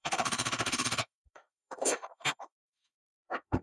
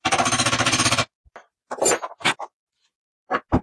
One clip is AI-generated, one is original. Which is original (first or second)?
second